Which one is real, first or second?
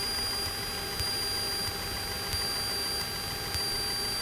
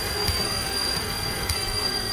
first